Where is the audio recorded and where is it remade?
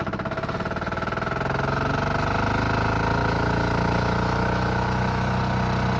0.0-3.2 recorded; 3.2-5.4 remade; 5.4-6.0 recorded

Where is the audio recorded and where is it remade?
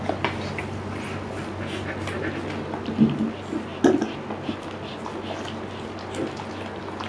0.0-7.1 recorded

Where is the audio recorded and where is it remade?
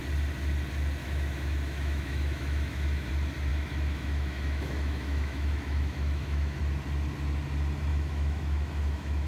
0.0-1.0 recorded; 1.0-3.1 remade; 3.1-3.5 recorded; 3.5-6.6 remade; 6.6-7.9 recorded; 7.9-9.3 remade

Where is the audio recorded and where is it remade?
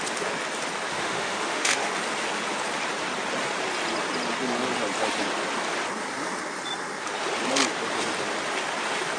0.0-0.9 recorded; 0.9-1.9 remade; 1.9-9.2 recorded